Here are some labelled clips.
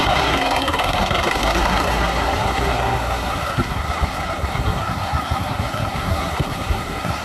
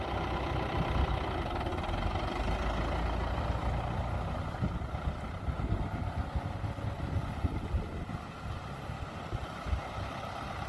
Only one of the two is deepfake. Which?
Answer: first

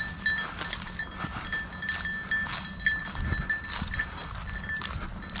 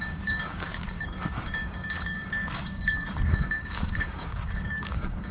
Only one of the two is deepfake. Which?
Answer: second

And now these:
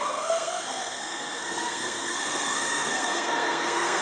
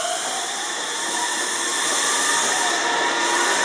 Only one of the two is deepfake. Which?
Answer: first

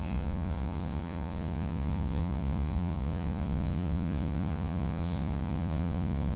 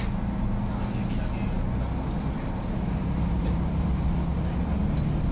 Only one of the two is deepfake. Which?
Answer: first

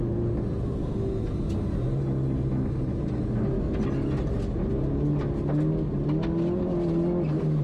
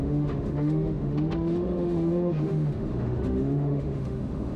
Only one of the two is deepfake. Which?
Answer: second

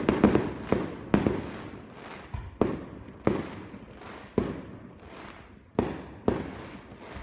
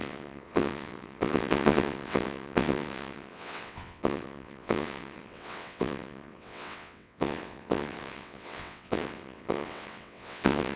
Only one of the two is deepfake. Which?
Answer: second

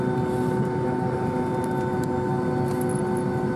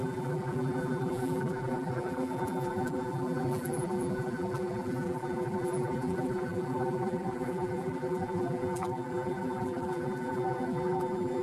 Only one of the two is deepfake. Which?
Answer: second